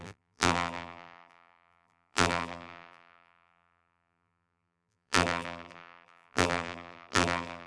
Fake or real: fake